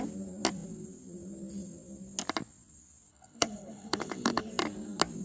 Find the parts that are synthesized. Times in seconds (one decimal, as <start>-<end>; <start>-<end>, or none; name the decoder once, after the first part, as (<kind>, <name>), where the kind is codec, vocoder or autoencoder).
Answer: 3.1-4.5 (codec, HILCodec)